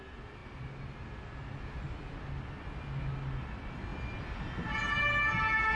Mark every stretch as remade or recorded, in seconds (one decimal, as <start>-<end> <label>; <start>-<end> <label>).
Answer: 0.0-5.8 recorded